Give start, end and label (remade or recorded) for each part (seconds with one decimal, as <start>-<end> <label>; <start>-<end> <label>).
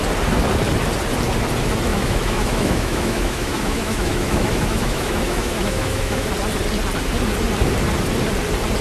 0.0-1.9 recorded; 1.9-6.3 remade; 6.3-8.8 recorded